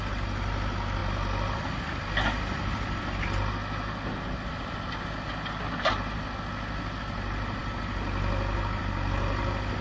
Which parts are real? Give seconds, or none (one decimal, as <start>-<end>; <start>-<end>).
0.0-9.8